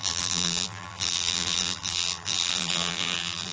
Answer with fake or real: fake